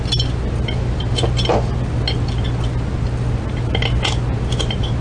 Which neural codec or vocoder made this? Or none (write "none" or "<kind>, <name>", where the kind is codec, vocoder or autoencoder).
none